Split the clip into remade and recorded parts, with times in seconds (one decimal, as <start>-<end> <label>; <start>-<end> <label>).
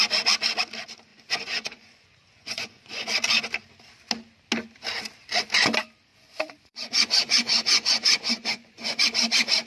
0.0-1.1 recorded; 1.1-3.1 remade; 3.1-6.1 recorded; 6.1-9.0 remade; 9.0-9.7 recorded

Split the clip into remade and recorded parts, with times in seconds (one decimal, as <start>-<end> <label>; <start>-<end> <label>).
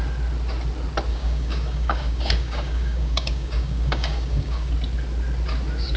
0.0-1.1 recorded; 1.1-4.7 remade; 4.7-6.0 recorded